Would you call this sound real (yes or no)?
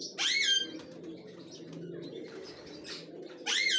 yes